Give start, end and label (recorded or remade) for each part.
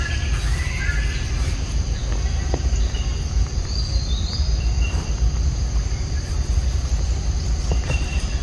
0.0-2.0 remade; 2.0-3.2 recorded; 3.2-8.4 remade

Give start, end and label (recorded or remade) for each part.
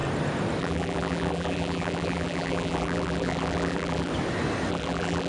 0.0-0.6 recorded; 0.6-4.1 remade; 4.1-4.7 recorded; 4.7-5.3 remade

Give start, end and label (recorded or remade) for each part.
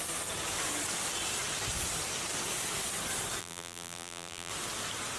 0.0-3.4 recorded; 3.4-4.5 remade; 4.5-5.2 recorded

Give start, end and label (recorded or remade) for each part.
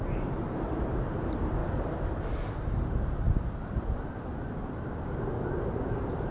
0.0-1.6 remade; 1.6-5.4 recorded; 5.4-6.3 remade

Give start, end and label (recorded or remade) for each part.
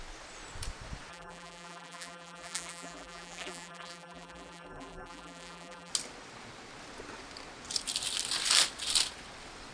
0.0-1.1 recorded; 1.1-5.9 remade; 5.9-9.7 recorded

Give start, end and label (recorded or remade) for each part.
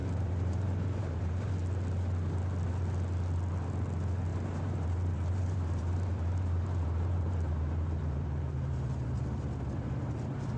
0.0-1.5 remade; 1.5-4.3 recorded; 4.3-9.2 remade; 9.2-10.6 recorded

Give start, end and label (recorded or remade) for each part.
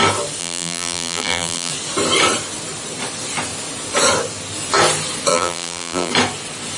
0.0-0.4 recorded; 0.4-1.7 remade; 1.7-5.3 recorded; 5.3-6.1 remade; 6.1-6.8 recorded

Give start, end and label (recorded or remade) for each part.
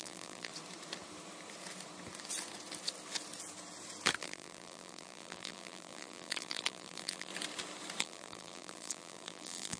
0.0-0.5 remade; 0.5-4.2 recorded; 4.2-7.3 remade; 7.3-8.0 recorded; 8.0-9.8 remade